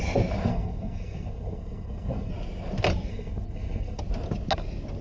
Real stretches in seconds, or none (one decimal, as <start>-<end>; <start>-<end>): 0.0-0.5; 2.3-3.1; 4.0-5.0